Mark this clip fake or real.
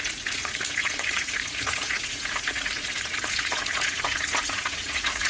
fake